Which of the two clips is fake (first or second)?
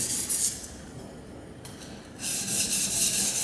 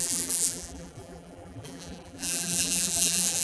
second